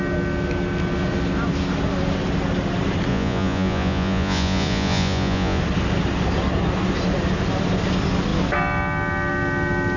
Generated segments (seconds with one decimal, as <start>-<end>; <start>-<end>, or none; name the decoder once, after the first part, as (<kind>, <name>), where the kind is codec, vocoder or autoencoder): 3.1-5.6 (vocoder, Vocos)